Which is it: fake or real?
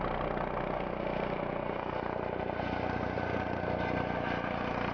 real